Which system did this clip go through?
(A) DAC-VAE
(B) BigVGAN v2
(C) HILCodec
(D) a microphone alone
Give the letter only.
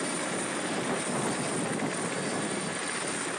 D